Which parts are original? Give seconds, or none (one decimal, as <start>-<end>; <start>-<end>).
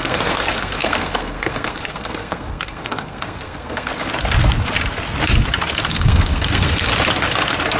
3.9-5.9; 6.9-7.8